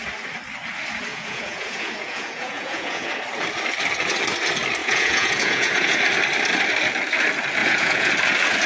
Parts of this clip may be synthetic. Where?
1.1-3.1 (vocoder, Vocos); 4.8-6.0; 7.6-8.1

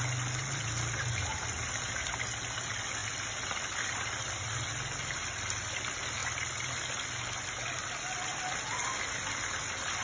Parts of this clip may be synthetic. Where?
3.0-4.7 (vocoder, BigVGAN v2); 6.2-7.1

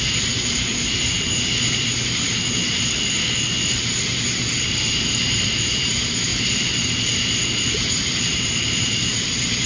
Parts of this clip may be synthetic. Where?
0.0-2.6 (vocoder, BigVGAN v2); 4.3-9.7

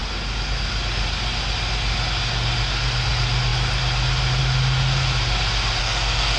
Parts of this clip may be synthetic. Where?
5.8-6.4 (codec, SNAC)